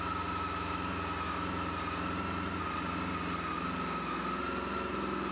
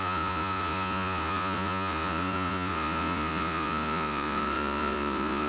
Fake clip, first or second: second